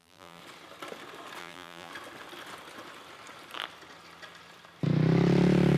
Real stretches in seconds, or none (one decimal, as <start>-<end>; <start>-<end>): 0.4-1.4; 1.9-5.8